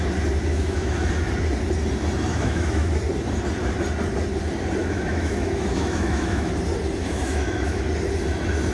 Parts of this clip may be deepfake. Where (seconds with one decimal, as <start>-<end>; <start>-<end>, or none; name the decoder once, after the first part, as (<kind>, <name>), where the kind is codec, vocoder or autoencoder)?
0.5-1.1 (autoencoder, DAC-VAE); 2.3-2.9; 4.8-6.5; 7.0-7.8